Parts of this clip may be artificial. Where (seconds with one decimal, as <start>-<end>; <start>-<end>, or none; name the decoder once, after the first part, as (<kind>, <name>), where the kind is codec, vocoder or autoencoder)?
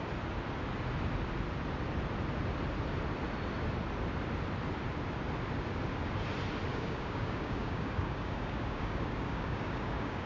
6.7-10.3 (codec, DAC)